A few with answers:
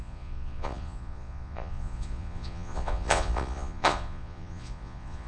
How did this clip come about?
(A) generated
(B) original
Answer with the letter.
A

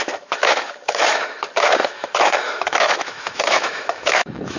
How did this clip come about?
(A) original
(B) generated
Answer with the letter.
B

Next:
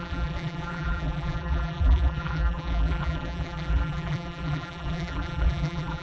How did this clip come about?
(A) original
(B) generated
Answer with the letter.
B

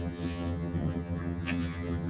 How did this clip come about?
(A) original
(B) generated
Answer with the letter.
B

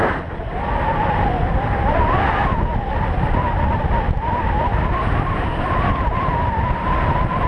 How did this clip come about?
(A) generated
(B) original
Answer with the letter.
B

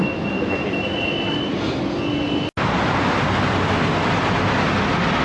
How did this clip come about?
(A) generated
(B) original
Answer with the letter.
B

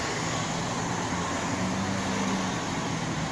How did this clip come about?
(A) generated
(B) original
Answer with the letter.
B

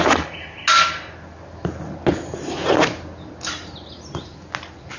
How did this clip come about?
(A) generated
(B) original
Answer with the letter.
B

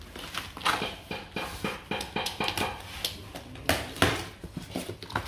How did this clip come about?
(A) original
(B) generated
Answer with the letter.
A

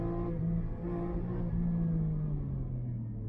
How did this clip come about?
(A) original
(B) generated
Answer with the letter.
A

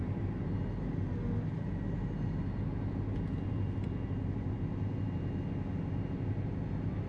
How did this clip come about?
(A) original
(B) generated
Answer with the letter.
A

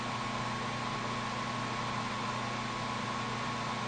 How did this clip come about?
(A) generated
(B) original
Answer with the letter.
B